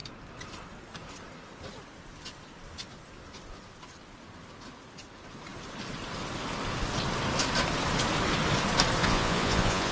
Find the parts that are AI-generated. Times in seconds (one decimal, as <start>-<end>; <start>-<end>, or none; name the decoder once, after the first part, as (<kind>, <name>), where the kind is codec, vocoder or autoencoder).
9.0-9.9 (vocoder, Vocos)

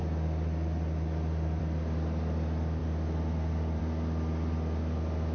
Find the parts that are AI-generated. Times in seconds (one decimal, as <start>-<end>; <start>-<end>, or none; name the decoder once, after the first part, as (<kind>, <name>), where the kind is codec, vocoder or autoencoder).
none

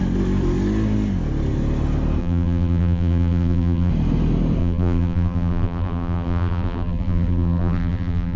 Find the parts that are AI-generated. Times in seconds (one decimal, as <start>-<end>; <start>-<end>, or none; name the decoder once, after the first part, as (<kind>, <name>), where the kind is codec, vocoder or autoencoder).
2.2-3.9 (vocoder, BigVGAN v2); 4.6-8.4

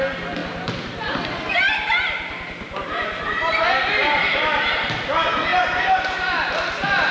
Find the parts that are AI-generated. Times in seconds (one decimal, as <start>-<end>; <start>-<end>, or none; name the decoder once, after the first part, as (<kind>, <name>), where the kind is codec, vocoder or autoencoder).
0.4-4.7 (vocoder, BigVGAN v2)

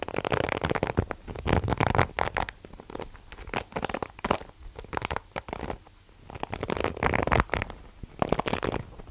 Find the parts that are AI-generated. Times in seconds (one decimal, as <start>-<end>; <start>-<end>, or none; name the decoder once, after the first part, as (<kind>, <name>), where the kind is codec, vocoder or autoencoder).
none

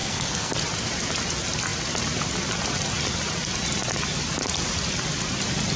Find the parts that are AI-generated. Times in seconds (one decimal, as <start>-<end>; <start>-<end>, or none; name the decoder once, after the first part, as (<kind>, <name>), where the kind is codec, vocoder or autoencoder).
0.0-0.5 (codec, SNAC)